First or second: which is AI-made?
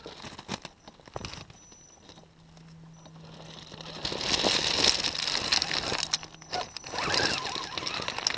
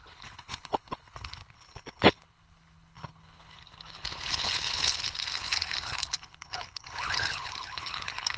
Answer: second